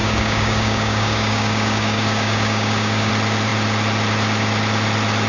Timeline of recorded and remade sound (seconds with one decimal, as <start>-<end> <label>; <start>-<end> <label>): 0.0-3.1 remade; 3.1-5.3 recorded